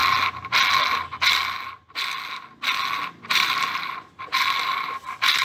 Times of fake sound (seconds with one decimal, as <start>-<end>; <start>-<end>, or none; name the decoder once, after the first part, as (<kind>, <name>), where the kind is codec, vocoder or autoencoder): 3.2-5.4 (vocoder, BigVGAN v2)